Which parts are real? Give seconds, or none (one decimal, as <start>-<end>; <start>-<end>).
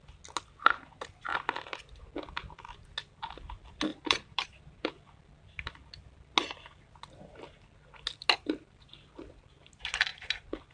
0.0-3.9; 4.9-10.7